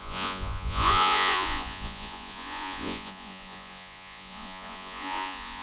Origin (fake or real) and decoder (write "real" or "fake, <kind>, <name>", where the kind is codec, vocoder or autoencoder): fake, vocoder, Vocos